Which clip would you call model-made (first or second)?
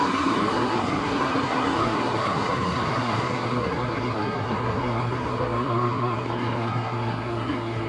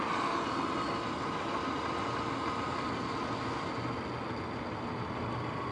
first